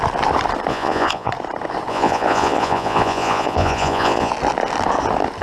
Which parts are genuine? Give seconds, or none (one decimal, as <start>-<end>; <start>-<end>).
0.0-0.7; 1.3-1.9; 4.3-5.4